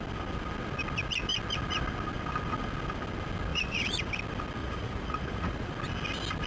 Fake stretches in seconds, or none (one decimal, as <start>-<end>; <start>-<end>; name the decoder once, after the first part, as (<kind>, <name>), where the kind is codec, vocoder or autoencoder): 3.5-4.1 (vocoder, Vocos); 4.6-5.7